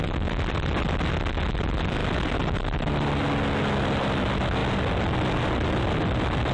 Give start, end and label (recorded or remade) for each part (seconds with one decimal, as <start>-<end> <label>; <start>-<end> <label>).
0.0-6.5 recorded